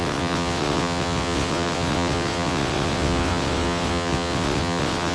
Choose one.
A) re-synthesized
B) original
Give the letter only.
A